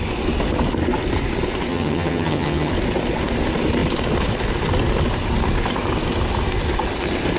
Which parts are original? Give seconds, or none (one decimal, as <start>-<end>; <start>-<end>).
0.0-1.7; 2.7-7.4